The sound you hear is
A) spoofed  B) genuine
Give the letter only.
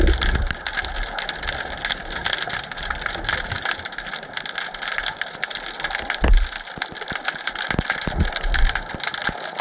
B